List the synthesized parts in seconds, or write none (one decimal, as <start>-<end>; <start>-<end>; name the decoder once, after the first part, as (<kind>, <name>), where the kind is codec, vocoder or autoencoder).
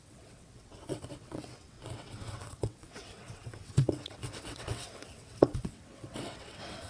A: 0.0-6.9 (vocoder, WaveNeXt)